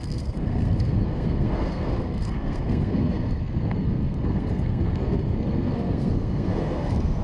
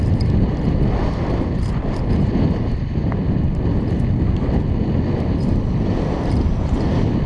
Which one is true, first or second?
second